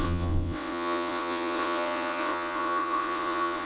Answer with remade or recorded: remade